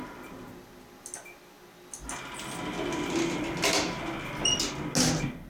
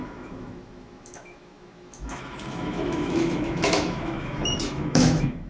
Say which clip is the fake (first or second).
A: second